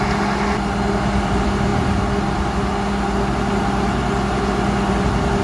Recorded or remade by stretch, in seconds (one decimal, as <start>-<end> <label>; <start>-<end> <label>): 0.0-5.4 recorded